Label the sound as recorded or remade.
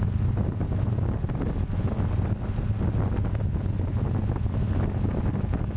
recorded